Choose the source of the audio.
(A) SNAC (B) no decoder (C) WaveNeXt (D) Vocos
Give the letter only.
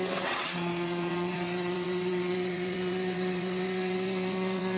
C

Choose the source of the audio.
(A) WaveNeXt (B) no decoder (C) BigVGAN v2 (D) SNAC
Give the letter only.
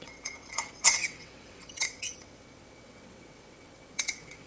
A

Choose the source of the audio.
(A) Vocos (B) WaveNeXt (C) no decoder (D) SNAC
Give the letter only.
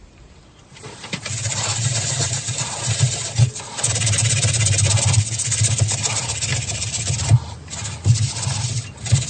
C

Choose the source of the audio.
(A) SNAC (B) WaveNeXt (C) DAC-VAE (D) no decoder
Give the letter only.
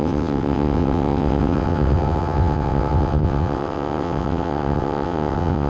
B